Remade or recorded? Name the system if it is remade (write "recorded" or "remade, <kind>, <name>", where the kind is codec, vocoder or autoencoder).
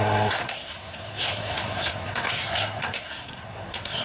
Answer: remade, codec, SNAC